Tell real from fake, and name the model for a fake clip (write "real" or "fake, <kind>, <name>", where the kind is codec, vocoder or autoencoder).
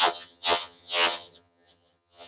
fake, vocoder, HiFi-GAN